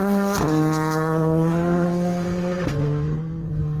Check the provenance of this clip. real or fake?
fake